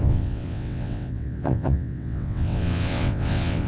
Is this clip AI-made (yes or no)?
yes